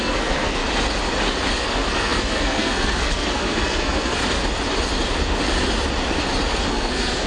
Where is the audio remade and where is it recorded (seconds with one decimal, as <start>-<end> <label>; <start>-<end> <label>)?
0.0-0.6 remade; 0.6-1.6 recorded; 1.6-4.2 remade; 4.2-6.7 recorded; 6.7-7.3 remade